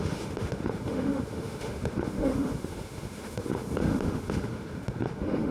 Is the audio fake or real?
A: fake